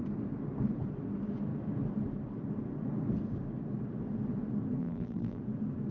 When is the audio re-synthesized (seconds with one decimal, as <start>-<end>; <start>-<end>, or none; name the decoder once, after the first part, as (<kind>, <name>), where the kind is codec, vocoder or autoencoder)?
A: 4.8-5.4 (vocoder, BigVGAN v2)